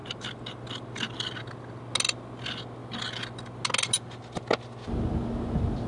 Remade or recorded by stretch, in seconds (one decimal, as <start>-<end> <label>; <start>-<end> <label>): 0.0-1.4 remade; 1.4-2.8 recorded; 2.8-3.6 remade; 3.6-5.9 recorded